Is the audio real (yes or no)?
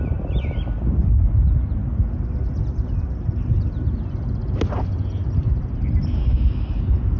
yes